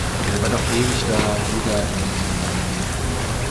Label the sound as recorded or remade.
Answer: recorded